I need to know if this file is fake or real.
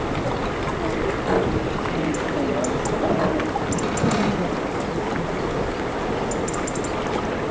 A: real